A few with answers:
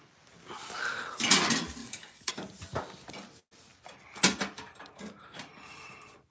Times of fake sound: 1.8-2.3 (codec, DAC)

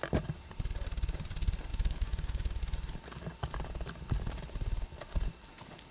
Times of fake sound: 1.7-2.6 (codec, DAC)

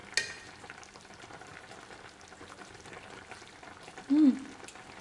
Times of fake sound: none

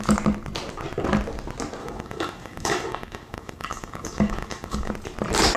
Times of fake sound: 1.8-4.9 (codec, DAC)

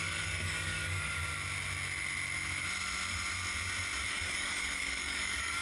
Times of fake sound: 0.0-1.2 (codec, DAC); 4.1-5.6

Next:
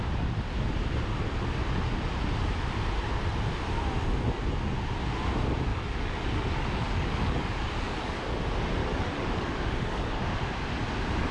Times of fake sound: 5.7-8.2 (codec, DAC); 8.8-10.2